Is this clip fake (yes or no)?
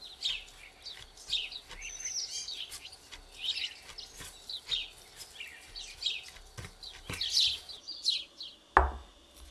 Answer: no